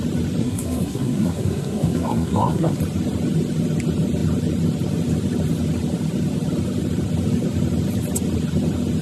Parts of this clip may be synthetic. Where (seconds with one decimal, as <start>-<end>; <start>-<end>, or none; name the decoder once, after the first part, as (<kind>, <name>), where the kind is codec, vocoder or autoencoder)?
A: 0.4-2.8 (codec, SNAC)